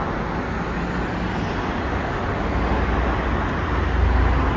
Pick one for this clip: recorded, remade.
recorded